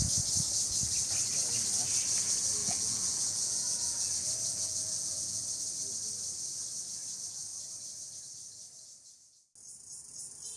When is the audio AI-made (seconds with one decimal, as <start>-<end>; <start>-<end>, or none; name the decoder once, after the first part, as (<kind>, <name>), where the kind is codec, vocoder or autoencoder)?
2.6-4.1 (vocoder, Vocos); 4.5-5.4